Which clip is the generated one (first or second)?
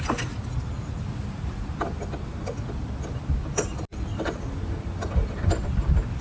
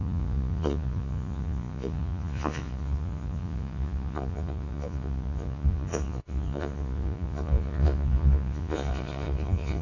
second